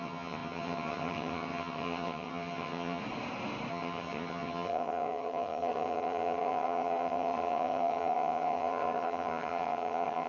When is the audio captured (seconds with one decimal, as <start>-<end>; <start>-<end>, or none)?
3.0-3.7